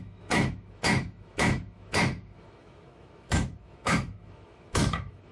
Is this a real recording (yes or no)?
no